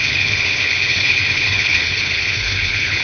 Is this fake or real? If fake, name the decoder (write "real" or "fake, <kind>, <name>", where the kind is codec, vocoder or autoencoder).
fake, codec, HILCodec